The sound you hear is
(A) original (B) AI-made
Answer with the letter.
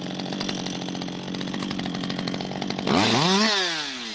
A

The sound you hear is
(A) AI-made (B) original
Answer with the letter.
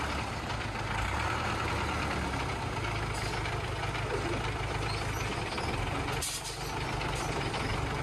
B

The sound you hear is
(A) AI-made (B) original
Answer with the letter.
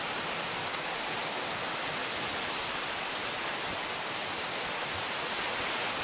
B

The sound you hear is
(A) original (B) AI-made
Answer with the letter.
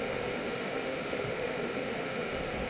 B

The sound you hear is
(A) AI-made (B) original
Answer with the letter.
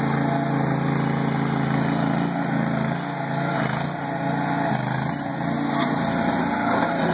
B